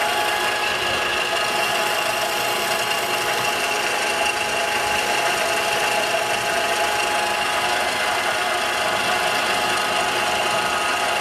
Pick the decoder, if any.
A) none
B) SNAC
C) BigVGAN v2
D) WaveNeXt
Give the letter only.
A